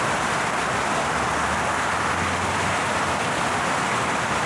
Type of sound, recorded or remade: recorded